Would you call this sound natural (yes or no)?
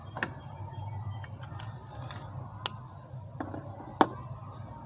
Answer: yes